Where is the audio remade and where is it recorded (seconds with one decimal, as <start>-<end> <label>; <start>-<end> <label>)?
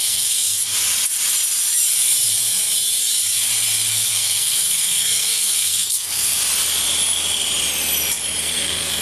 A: 0.0-0.6 remade; 0.6-3.9 recorded; 3.9-6.4 remade; 6.4-8.4 recorded; 8.4-9.0 remade